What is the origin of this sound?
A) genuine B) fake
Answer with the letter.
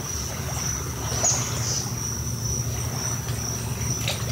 A